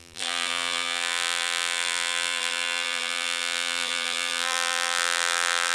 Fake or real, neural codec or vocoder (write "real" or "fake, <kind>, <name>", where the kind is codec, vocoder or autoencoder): fake, vocoder, BigVGAN v2